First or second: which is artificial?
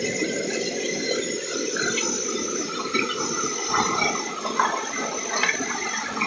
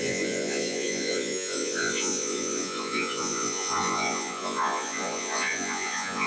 second